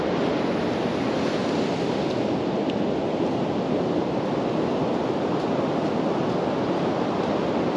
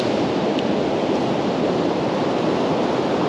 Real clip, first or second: first